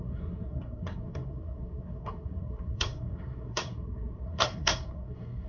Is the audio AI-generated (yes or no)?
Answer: yes